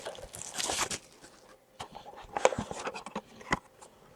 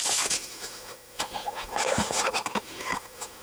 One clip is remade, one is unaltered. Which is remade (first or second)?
second